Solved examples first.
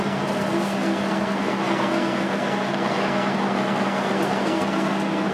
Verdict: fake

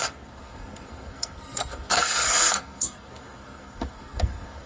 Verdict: fake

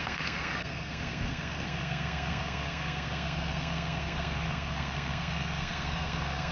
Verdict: fake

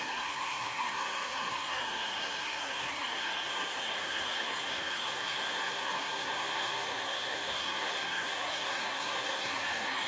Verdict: fake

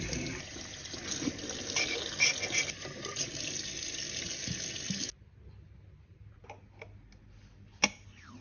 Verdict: real